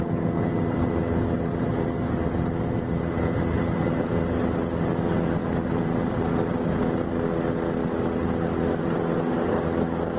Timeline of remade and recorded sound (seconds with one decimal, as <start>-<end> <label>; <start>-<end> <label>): 0.0-10.2 recorded